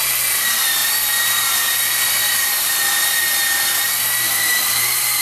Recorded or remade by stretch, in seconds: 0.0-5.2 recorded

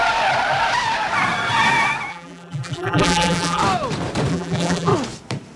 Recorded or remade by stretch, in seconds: 0.0-2.1 recorded; 2.1-3.6 remade; 3.6-4.3 recorded; 4.3-4.9 remade; 4.9-5.6 recorded

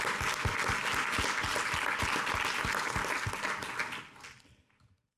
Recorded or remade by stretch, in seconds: 0.0-1.5 recorded; 1.5-2.0 remade; 2.0-5.2 recorded

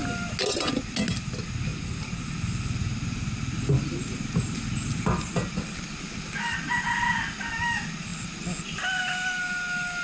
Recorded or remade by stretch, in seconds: 0.0-10.0 recorded

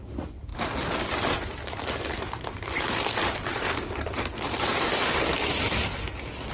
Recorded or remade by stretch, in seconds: 0.0-0.5 recorded; 0.5-2.8 remade; 2.8-3.5 recorded; 3.5-4.7 remade; 4.7-6.5 recorded

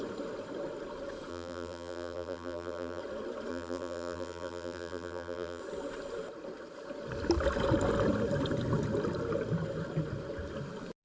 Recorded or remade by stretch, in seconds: 0.0-1.3 recorded; 1.3-3.0 remade; 3.0-3.5 recorded; 3.5-5.6 remade; 5.6-11.0 recorded

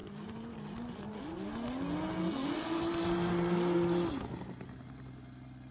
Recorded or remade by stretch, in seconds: 0.0-1.1 remade; 1.1-5.7 recorded